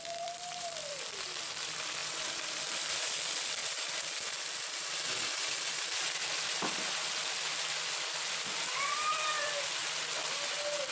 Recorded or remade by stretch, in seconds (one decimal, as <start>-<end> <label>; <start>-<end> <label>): 0.0-3.6 remade; 3.6-8.5 recorded; 8.5-9.8 remade; 9.8-10.9 recorded